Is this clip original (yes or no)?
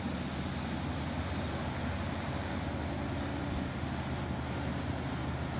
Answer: yes